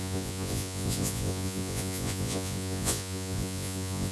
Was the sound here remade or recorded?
remade